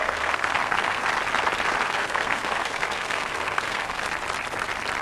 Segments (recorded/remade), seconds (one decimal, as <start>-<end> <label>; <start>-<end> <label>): 0.0-1.0 remade; 1.0-1.8 recorded; 1.8-4.0 remade; 4.0-5.0 recorded